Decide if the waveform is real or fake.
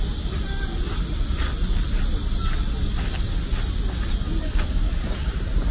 real